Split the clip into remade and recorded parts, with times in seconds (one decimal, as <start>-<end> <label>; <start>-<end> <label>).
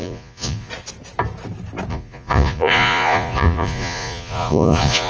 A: 0.0-0.7 remade; 0.7-1.9 recorded; 1.9-5.1 remade